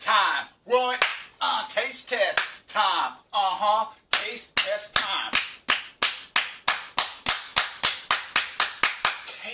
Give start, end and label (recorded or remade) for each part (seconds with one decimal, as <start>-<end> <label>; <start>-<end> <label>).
0.0-9.5 recorded